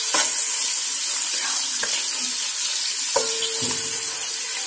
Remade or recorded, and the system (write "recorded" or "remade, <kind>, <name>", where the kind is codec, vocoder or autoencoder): recorded